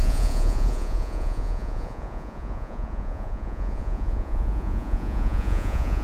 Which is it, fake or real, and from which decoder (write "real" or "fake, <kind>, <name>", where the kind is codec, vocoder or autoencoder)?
fake, vocoder, Vocos